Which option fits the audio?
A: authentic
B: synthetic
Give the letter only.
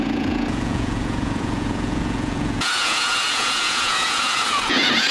B